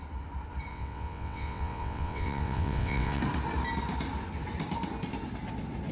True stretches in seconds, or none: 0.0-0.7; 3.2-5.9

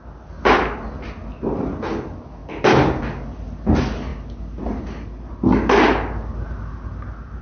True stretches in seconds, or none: 0.0-2.4; 3.0-7.4

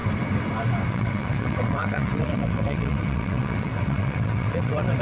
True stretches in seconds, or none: 0.0-0.9

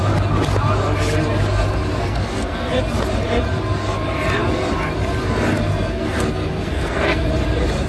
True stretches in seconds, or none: 0.0-1.9; 2.7-5.7; 7.3-7.9